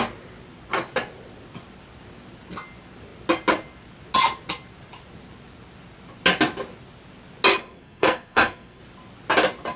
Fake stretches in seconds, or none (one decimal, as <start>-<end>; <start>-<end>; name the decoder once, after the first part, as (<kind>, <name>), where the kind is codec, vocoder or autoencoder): 7.5-8.8 (codec, SNAC)